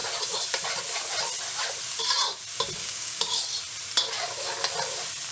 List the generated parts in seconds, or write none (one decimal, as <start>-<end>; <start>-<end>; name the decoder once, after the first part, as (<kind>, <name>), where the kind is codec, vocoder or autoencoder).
2.8-3.4 (codec, DAC)